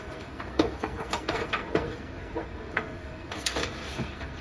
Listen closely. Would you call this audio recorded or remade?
remade